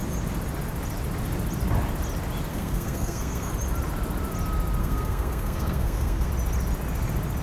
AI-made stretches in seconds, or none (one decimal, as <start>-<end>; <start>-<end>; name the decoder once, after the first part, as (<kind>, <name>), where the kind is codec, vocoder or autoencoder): 2.5-3.5 (codec, SNAC); 4.8-6.3